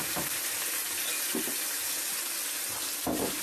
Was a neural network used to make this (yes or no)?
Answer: no